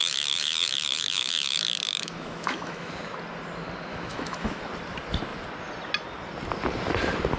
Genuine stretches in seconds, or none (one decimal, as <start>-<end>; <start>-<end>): 2.9-3.9; 4.6-7.4